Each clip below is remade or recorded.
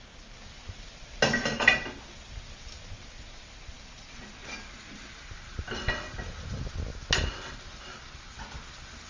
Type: recorded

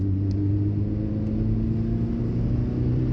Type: recorded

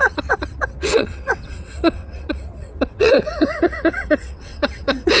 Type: remade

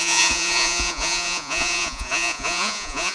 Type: remade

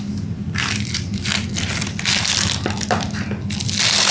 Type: recorded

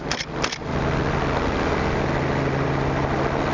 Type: recorded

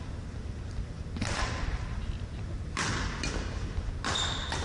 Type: recorded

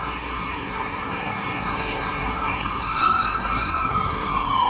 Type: remade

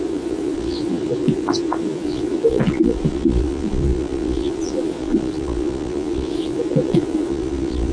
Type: remade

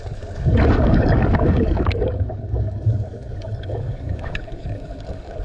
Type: remade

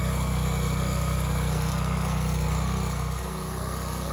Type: remade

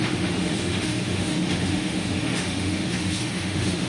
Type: remade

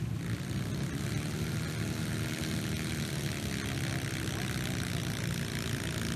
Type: recorded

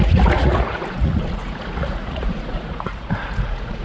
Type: remade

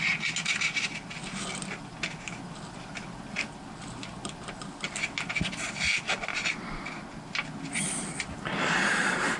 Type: recorded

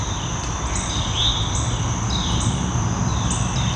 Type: recorded